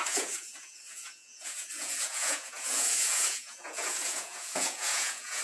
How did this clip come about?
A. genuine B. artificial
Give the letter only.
B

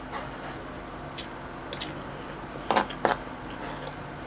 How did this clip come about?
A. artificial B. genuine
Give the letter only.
B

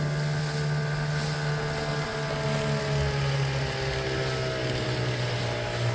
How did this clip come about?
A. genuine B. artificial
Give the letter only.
A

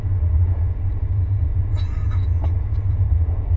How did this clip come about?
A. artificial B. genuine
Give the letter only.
A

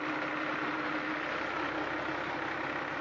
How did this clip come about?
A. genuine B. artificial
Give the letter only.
A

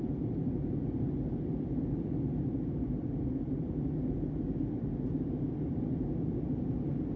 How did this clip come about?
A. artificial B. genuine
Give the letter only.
B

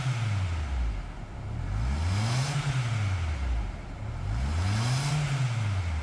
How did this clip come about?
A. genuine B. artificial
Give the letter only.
A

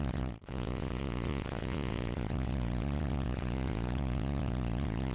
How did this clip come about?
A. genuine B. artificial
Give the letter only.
B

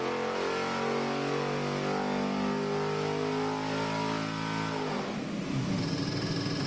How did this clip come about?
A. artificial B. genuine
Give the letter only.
B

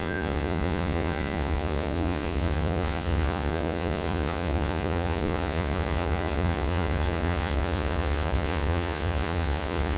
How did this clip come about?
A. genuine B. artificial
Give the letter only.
B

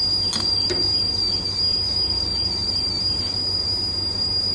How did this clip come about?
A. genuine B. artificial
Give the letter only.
A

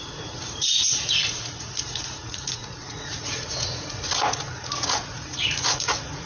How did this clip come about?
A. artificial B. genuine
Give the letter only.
A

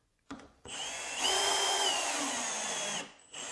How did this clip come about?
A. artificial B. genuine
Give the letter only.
A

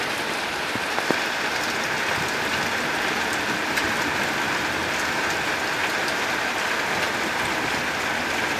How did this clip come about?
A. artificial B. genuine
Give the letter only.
B